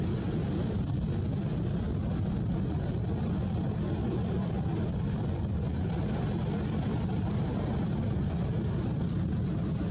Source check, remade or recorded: recorded